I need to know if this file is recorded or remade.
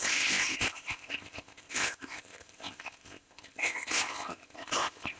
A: remade